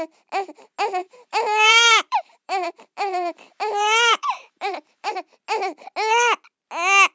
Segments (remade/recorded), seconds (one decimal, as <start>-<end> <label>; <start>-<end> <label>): 0.0-1.0 recorded; 1.0-5.1 remade; 5.1-7.1 recorded